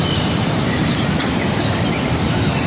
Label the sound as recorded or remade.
remade